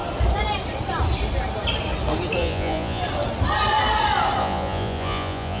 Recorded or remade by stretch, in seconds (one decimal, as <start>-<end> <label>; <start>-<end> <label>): 0.0-2.4 recorded; 2.4-3.0 remade; 3.0-4.4 recorded; 4.4-5.6 remade